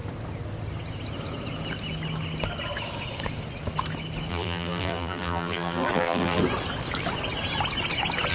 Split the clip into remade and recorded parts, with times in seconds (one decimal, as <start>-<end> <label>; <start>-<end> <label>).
0.0-4.3 recorded; 4.3-6.4 remade; 6.4-8.3 recorded